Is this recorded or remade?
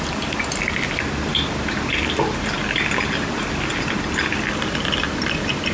recorded